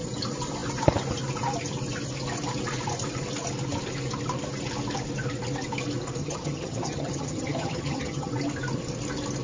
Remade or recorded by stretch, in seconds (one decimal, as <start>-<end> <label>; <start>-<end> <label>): 0.0-6.2 recorded; 6.2-8.3 remade; 8.3-9.4 recorded